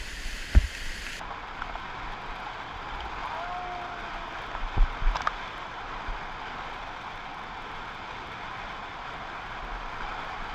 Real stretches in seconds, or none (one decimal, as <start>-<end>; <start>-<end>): 0.0-10.5

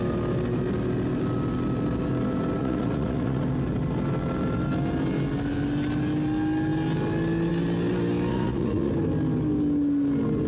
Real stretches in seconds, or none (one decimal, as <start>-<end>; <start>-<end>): 0.0-2.6; 3.4-8.3; 8.9-10.5

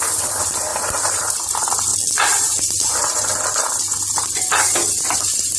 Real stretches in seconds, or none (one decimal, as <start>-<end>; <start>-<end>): 0.0-5.6

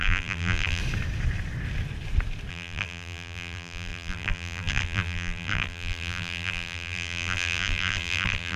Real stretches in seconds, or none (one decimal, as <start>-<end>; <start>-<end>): 0.8-2.5

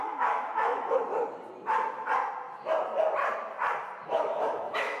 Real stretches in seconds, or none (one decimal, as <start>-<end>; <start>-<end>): 1.0-4.0

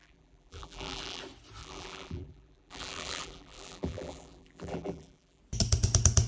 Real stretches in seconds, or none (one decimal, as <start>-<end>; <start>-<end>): 1.2-1.6; 5.4-6.3

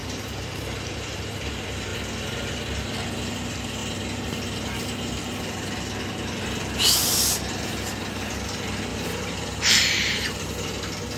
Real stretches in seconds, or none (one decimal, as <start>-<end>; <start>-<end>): 1.5-8.9; 10.7-11.2